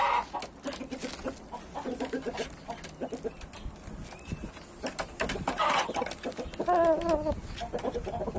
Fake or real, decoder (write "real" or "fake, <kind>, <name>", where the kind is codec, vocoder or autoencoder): real